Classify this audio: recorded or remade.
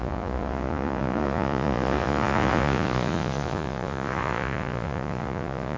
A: remade